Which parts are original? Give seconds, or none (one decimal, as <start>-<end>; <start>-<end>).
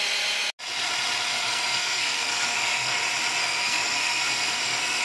0.0-1.3; 3.0-3.4